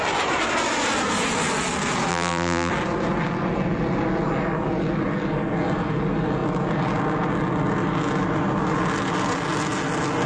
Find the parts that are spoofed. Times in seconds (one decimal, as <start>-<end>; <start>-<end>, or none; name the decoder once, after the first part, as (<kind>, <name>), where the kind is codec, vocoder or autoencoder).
2.1-2.7 (vocoder, BigVGAN v2)